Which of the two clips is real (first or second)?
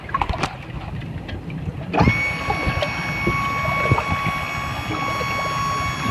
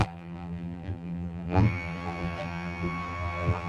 first